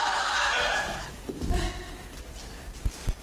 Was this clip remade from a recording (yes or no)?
no